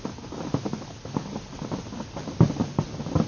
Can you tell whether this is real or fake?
real